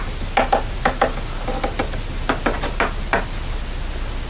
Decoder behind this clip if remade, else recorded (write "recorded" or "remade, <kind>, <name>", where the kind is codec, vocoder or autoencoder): recorded